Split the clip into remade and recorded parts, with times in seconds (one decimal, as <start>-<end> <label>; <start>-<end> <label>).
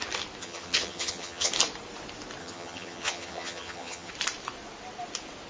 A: 0.0-0.4 recorded; 0.4-1.5 remade; 1.5-2.4 recorded; 2.4-4.1 remade; 4.1-5.5 recorded